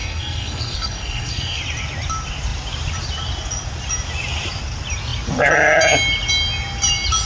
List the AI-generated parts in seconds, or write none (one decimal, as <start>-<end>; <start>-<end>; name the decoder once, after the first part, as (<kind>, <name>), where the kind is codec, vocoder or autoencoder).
0.0-1.6 (codec, SNAC)